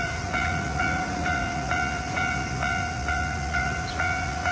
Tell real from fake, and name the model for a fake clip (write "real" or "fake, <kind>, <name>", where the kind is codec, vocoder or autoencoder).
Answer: fake, vocoder, Vocos